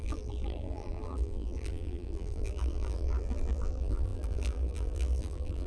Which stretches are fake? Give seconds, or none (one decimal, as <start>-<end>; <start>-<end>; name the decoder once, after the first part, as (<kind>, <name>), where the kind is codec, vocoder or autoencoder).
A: 0.0-5.7 (vocoder, BigVGAN v2)

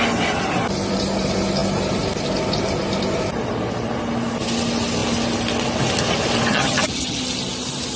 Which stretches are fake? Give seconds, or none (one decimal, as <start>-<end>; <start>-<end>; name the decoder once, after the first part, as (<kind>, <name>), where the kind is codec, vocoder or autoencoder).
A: 6.5-7.2 (vocoder, HiFi-GAN)

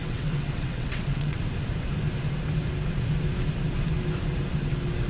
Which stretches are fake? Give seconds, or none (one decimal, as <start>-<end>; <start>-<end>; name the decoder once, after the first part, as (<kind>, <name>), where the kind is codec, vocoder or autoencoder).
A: 0.0-1.4 (vocoder, WaveNeXt)

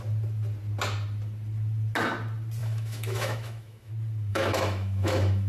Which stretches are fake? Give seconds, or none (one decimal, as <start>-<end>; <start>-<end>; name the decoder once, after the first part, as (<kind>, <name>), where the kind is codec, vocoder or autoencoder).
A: 2.6-3.9 (autoencoder, DAC-VAE); 4.3-5.5

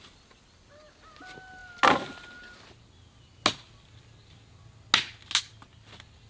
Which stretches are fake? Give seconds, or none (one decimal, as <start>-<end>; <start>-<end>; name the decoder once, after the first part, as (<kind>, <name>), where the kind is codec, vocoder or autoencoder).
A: none

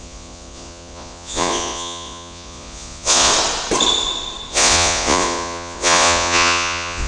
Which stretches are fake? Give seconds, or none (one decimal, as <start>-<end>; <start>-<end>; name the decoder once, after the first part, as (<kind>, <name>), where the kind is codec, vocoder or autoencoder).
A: 0.0-3.3 (vocoder, Vocos); 4.5-7.1